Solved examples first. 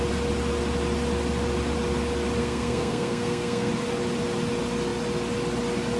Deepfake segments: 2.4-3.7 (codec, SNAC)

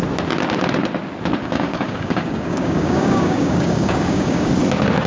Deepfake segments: 1.4-4.5 (codec, DAC)

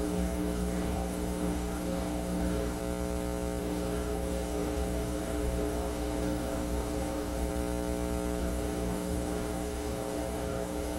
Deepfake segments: 0.0-2.8 (codec, DAC); 3.6-7.5; 8.4-11.0

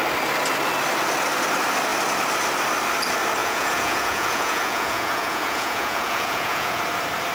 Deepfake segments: 3.4-6.8 (vocoder, Vocos)

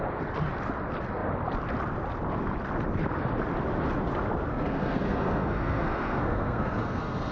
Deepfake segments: 4.5-7.3 (codec, SNAC)

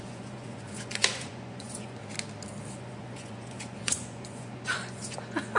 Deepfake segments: 0.0-2.0 (vocoder, Vocos); 2.7-5.6

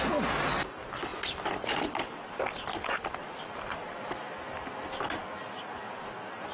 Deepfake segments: 1.1-5.0 (vocoder, BigVGAN v2)

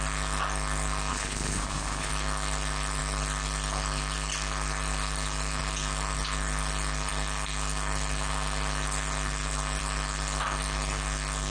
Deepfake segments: 1.1-2.1 (codec, HILCodec)